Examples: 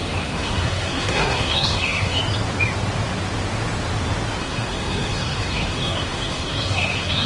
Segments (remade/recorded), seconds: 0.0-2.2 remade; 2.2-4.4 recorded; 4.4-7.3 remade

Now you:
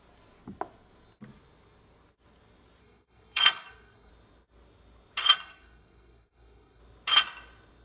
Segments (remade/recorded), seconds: 0.0-2.8 recorded; 2.8-4.1 remade; 4.1-5.2 recorded; 5.2-6.8 remade; 6.8-7.8 recorded

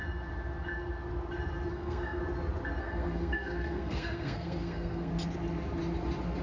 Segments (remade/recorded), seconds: 0.0-1.7 recorded; 1.7-2.2 remade; 2.2-2.8 recorded; 2.8-5.1 remade; 5.1-6.4 recorded